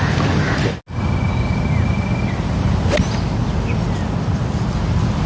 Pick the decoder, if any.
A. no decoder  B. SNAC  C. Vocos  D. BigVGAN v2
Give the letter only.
A